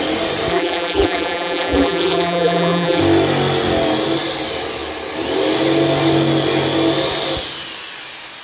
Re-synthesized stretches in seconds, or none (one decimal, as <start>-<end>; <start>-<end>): 0.5-3.0